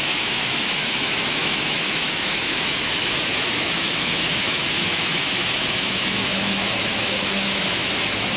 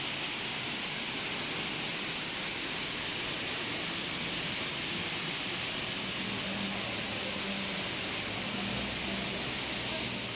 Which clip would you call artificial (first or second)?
first